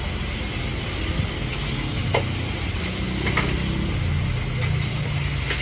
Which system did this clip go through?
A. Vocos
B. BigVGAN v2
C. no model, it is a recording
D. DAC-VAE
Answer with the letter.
C